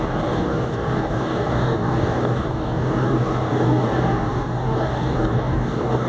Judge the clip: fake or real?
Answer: fake